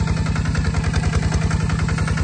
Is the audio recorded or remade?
recorded